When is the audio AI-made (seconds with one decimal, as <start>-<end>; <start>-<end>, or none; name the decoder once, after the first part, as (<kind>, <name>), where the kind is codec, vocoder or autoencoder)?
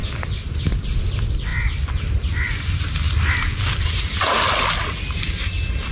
none